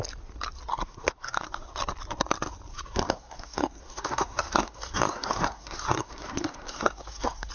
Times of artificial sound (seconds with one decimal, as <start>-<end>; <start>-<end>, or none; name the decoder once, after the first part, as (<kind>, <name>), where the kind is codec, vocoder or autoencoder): 0.7-1.7 (codec, SNAC); 2.7-7.5

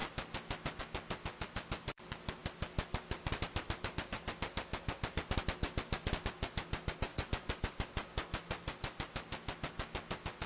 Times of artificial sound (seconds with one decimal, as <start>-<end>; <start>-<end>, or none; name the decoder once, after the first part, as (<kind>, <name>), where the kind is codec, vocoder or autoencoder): 7.1-7.6 (vocoder, Vocos)